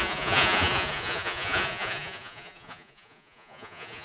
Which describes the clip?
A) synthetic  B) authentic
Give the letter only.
A